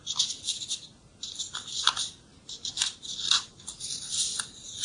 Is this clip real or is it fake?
real